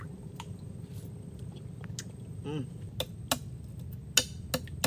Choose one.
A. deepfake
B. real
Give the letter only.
B